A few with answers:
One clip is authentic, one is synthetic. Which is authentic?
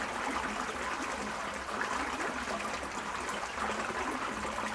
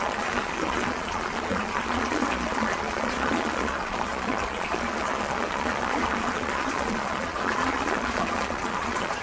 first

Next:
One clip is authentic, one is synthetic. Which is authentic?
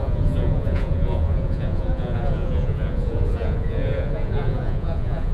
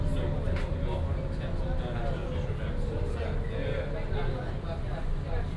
second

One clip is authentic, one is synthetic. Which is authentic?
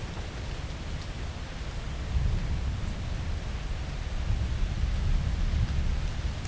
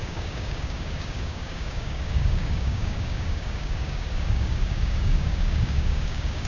first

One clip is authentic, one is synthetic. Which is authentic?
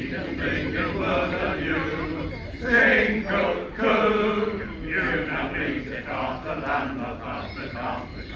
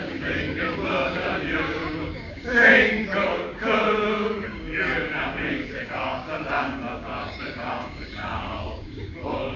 first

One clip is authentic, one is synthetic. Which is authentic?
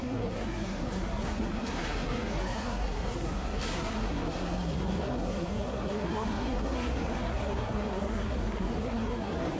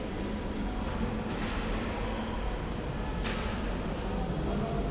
second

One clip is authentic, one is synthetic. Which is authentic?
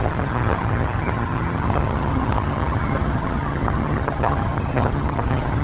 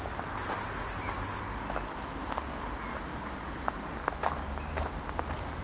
second